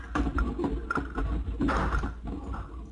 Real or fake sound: real